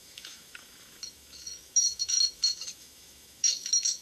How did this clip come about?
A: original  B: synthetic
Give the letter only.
B